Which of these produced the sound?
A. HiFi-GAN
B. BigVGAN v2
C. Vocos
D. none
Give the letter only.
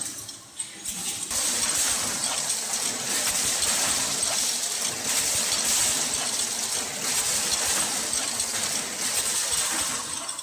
B